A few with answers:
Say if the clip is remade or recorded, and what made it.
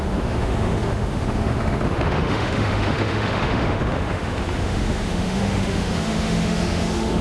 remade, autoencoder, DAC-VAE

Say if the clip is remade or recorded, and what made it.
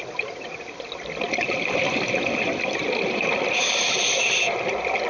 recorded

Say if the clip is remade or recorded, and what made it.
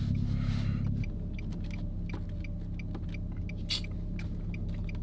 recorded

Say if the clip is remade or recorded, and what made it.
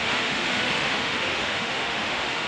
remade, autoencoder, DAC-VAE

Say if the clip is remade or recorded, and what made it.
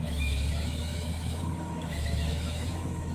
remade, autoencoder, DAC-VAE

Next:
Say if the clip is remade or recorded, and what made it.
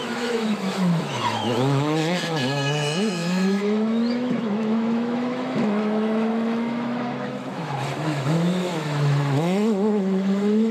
remade, autoencoder, DAC-VAE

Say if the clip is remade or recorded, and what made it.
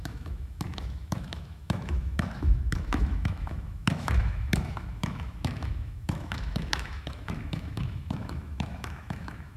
remade, autoencoder, DAC-VAE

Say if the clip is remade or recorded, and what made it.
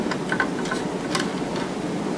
recorded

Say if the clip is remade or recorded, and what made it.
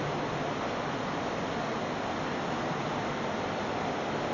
recorded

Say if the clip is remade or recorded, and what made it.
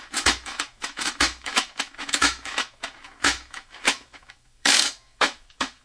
remade, autoencoder, DAC-VAE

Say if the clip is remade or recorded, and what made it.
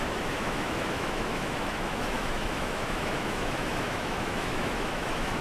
remade, autoencoder, DAC-VAE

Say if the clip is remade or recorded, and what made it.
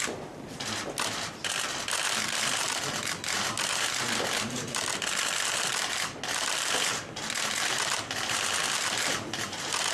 recorded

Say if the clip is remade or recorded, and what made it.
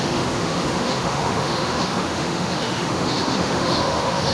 remade, autoencoder, DAC-VAE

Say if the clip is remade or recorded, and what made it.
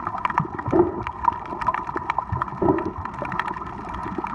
recorded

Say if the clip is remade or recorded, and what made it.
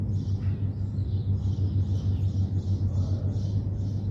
recorded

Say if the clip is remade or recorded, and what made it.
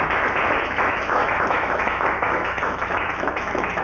remade, autoencoder, DAC-VAE